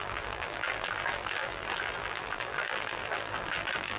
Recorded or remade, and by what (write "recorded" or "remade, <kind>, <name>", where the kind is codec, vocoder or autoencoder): remade, vocoder, BigVGAN v2